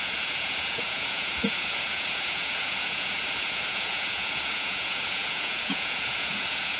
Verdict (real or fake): fake